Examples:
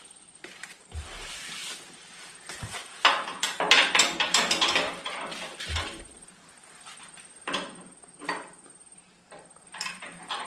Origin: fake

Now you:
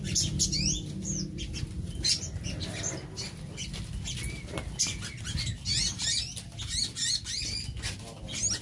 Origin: real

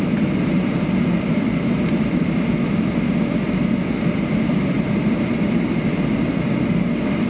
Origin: real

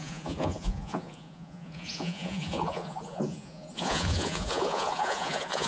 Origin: fake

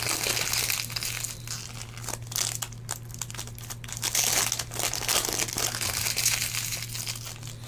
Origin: real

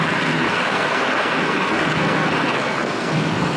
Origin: fake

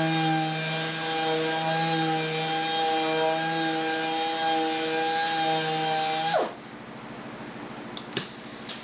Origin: real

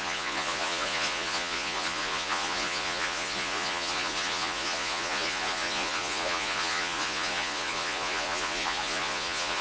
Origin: fake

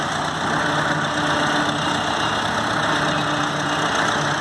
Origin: real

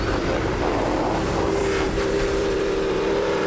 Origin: fake